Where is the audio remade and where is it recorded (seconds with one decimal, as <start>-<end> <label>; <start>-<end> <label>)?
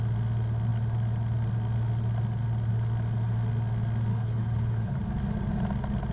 0.0-4.1 recorded; 4.1-5.0 remade; 5.0-6.1 recorded